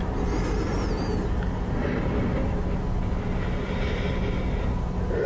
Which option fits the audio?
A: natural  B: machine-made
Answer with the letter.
A